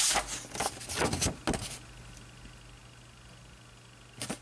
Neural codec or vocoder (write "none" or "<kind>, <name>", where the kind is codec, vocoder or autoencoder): none